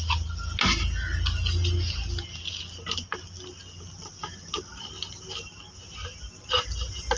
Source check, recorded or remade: recorded